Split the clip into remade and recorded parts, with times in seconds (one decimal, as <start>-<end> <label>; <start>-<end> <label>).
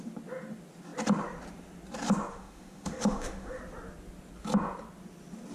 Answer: 0.0-2.3 recorded; 2.3-3.6 remade; 3.6-5.5 recorded